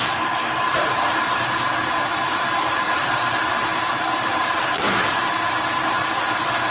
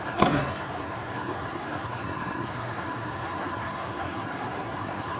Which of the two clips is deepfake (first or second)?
second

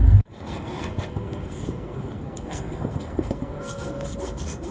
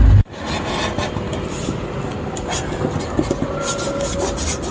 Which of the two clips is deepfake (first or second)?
first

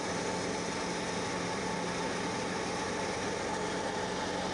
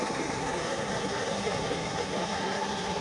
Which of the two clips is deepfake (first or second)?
second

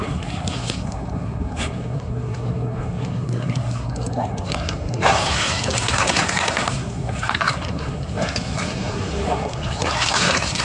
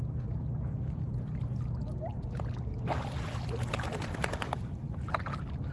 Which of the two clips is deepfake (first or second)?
first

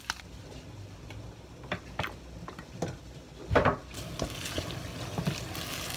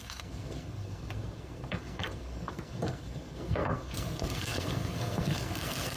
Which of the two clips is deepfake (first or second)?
second